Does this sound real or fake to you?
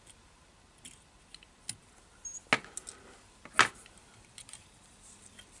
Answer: real